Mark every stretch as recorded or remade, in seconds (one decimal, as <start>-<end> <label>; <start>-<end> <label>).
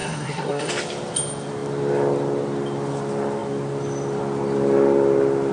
0.0-0.7 remade; 0.7-5.5 recorded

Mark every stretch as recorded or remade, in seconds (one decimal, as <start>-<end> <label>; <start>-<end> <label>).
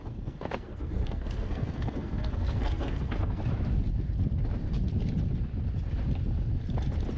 0.0-3.4 remade; 3.4-7.2 recorded